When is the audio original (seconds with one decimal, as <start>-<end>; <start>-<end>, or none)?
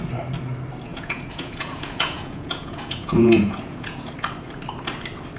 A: 0.0-0.9; 4.1-5.4